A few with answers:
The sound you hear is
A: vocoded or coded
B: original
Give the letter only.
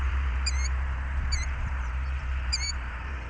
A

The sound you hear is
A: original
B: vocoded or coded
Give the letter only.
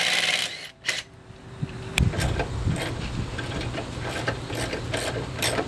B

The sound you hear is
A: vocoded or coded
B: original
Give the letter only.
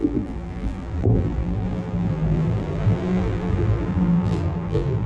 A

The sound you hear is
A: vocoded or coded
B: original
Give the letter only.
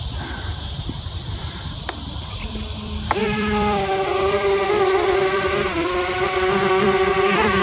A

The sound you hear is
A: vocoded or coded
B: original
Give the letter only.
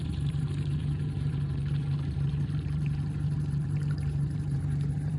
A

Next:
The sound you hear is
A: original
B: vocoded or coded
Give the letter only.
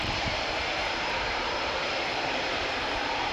B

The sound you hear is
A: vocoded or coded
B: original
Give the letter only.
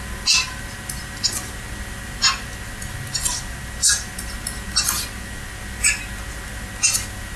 B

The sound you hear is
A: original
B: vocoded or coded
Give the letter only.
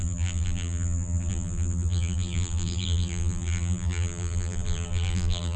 B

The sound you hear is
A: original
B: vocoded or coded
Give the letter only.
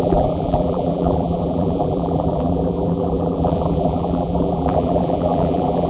B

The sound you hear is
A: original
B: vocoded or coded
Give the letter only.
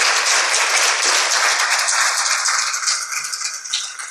B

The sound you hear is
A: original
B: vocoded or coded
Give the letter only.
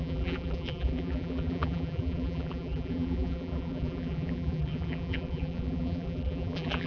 B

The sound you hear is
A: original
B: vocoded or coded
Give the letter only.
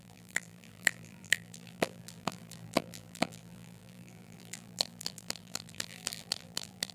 B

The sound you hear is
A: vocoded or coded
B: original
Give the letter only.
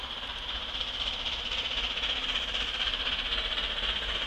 B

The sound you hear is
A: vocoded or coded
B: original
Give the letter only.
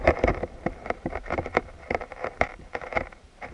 A